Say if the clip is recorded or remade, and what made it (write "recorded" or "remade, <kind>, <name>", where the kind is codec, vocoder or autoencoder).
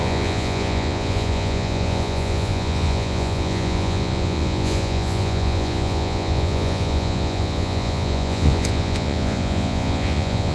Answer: remade, vocoder, Vocos